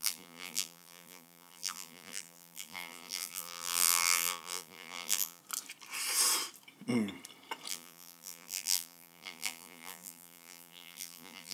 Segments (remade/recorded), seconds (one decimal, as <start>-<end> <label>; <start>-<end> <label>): 0.0-5.4 remade; 5.4-7.7 recorded; 7.7-11.5 remade